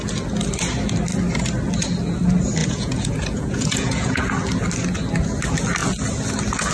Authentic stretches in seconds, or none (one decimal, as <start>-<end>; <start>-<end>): 0.0-2.6; 4.2-6.7